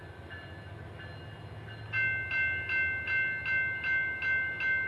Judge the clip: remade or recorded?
recorded